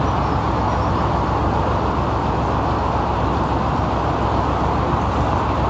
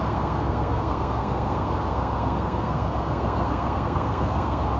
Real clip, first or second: first